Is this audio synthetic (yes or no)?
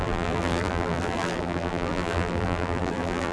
yes